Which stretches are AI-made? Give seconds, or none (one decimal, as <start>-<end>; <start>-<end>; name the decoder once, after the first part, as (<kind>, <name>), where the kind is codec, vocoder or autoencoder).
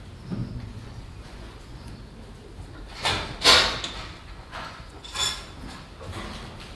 0.4-1.9 (vocoder, Vocos); 4.0-5.4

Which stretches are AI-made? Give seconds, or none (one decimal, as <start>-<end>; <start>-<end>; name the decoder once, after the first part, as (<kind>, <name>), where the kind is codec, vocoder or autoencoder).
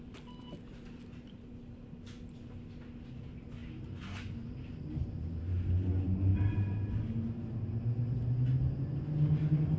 none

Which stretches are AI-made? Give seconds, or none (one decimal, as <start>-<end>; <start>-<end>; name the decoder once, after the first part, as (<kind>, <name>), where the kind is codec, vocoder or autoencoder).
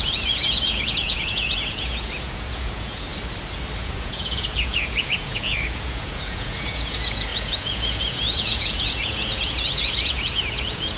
0.0-3.1 (vocoder, Vocos); 3.8-11.0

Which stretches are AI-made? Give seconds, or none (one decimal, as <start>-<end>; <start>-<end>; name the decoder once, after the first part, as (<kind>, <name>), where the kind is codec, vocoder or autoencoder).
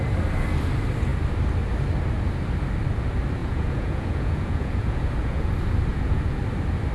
3.4-5.5 (vocoder, Vocos); 5.9-6.4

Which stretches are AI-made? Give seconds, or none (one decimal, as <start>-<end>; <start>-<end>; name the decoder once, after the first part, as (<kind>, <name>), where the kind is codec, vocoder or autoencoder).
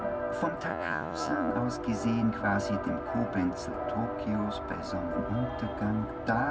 0.7-1.5 (vocoder, Vocos)